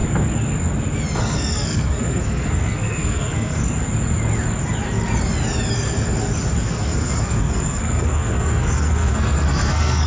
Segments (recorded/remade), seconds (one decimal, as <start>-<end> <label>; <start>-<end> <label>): 0.0-1.2 recorded; 1.2-3.6 remade; 3.6-6.7 recorded; 6.7-10.1 remade